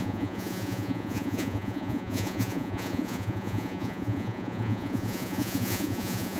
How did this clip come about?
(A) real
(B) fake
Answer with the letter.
B